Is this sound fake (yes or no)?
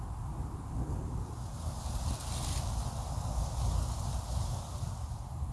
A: no